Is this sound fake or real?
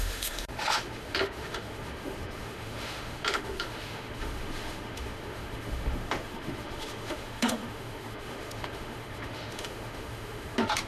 fake